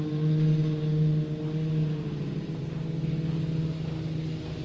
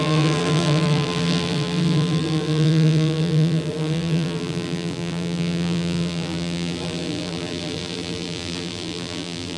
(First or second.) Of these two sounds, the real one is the first